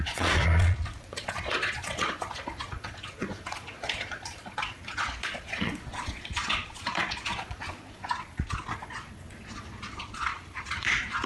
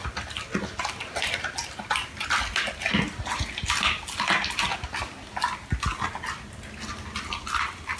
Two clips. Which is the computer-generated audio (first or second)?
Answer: first